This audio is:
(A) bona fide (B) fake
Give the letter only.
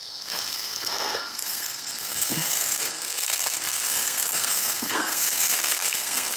B